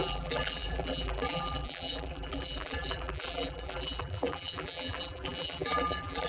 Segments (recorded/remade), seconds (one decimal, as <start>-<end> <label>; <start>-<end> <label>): 0.0-6.3 remade

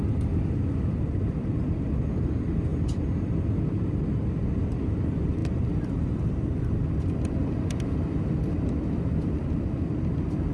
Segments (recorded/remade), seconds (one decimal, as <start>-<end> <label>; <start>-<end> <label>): 0.0-2.7 remade; 2.7-3.6 recorded; 3.6-10.5 remade

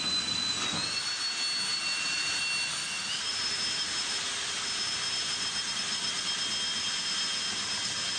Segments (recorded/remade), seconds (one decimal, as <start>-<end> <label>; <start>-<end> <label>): 0.0-1.7 recorded; 1.7-2.4 remade; 2.4-2.8 recorded; 2.8-6.2 remade; 6.2-8.2 recorded

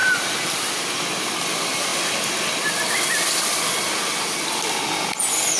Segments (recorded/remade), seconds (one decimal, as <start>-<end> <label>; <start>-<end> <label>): 0.0-0.9 remade; 0.9-1.9 recorded; 1.9-4.8 remade; 4.8-5.6 recorded

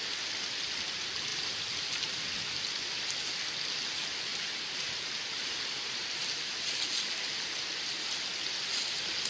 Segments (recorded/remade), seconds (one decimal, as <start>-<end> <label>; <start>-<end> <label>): 0.0-1.3 recorded; 1.3-2.0 remade; 2.0-4.3 recorded; 4.3-6.2 remade; 6.2-9.3 recorded